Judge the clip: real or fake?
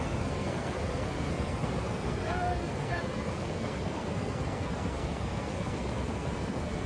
fake